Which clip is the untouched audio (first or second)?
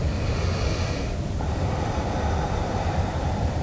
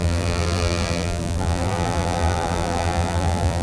first